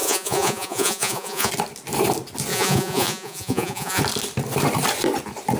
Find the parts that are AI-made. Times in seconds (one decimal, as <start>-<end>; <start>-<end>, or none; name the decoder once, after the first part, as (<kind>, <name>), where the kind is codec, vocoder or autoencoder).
0.0-1.5 (vocoder, Vocos); 2.5-4.0